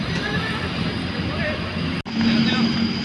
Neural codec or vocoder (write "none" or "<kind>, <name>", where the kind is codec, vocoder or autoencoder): none